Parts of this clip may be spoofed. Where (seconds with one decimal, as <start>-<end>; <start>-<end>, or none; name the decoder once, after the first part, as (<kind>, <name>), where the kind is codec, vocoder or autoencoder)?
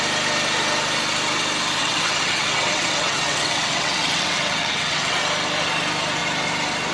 1.8-5.2 (vocoder, WaveNeXt)